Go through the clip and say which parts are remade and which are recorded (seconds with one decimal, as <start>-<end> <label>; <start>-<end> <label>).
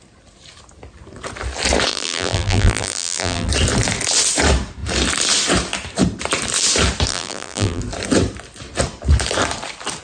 0.0-1.9 recorded; 1.9-3.5 remade; 3.5-7.1 recorded; 7.1-7.8 remade; 7.8-10.0 recorded